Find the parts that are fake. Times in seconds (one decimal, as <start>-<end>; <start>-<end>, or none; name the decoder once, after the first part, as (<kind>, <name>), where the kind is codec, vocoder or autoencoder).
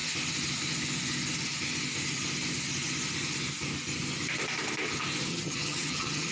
5.3-6.3 (vocoder, HiFi-GAN)